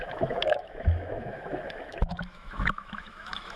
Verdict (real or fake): fake